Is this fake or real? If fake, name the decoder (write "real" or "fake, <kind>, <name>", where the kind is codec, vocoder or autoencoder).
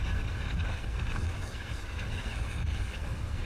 fake, codec, SNAC